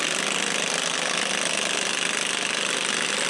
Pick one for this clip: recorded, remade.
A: recorded